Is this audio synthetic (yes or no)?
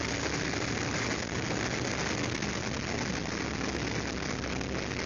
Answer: no